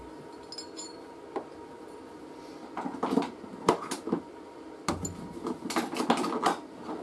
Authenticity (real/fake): real